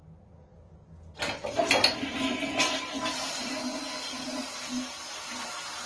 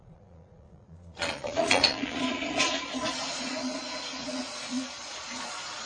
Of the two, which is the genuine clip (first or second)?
first